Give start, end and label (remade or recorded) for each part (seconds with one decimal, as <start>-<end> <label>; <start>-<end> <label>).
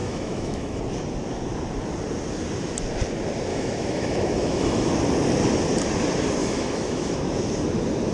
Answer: 0.0-0.8 remade; 0.8-3.5 recorded; 3.5-4.9 remade; 4.9-6.4 recorded; 6.4-7.1 remade; 7.1-8.1 recorded